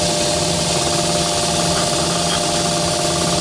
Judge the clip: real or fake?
real